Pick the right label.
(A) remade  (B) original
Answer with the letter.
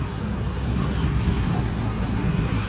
A